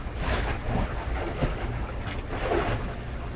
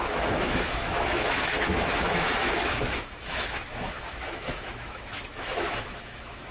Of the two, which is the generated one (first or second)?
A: second